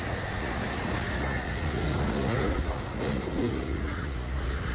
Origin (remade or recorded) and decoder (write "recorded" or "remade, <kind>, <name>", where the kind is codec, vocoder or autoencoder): remade, vocoder, Vocos